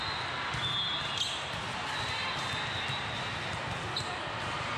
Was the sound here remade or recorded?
recorded